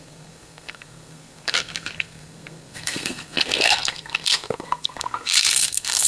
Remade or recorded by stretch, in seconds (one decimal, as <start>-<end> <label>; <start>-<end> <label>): 0.0-6.1 remade